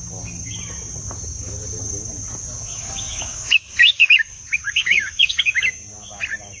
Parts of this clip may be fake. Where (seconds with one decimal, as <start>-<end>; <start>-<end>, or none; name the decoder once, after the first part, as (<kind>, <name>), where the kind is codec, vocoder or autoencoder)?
2.7-5.4 (codec, DAC)